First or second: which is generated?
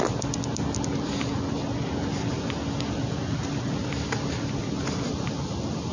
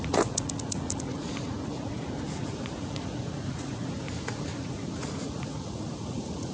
second